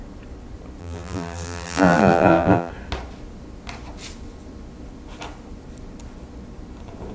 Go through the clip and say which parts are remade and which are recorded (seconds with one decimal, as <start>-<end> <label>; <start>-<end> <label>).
0.0-0.8 recorded; 0.8-2.7 remade; 2.7-7.1 recorded